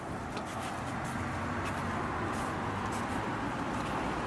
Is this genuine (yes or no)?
yes